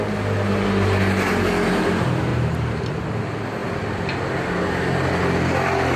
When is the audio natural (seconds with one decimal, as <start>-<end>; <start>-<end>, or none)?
0.0-2.3; 2.9-6.0